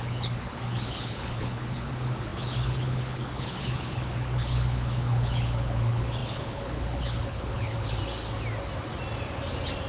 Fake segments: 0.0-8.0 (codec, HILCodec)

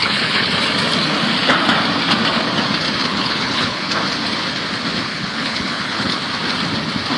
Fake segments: 0.0-0.5 (codec, HILCodec); 3.0-3.9; 5.1-6.2

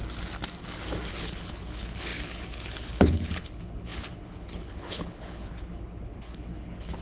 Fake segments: 1.1-7.0 (codec, HILCodec)

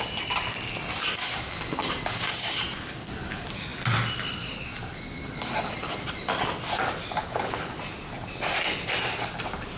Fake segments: 7.2-7.7 (codec, HILCodec)

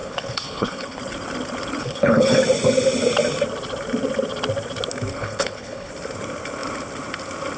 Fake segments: 0.0-1.0 (codec, HILCodec); 1.8-2.4; 5.1-5.9

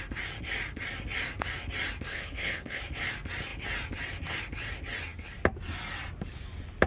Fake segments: 2.1-2.8 (codec, HILCodec)

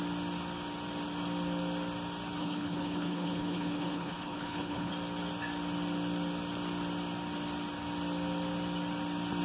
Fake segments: 2.4-4.9 (codec, HILCodec)

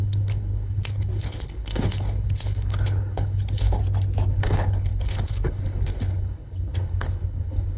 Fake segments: 0.0-3.8 (codec, HILCodec); 4.3-7.8